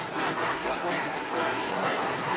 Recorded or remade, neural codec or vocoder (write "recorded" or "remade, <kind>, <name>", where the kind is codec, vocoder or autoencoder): remade, codec, SNAC